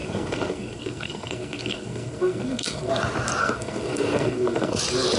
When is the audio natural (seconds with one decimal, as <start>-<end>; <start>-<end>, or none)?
2.9-3.4; 4.8-5.2